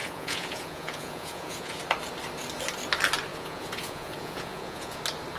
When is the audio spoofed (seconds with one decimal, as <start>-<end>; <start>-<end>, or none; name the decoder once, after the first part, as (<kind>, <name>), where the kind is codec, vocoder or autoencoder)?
0.0-1.8 (vocoder, Vocos); 3.3-5.0